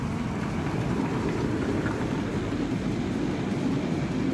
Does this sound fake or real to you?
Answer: real